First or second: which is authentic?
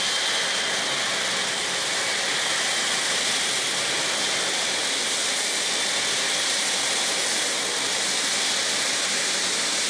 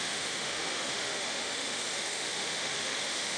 first